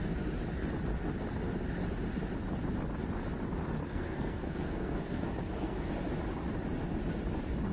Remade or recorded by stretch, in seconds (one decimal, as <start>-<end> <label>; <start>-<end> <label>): 0.0-3.8 recorded; 3.8-5.9 remade; 5.9-7.7 recorded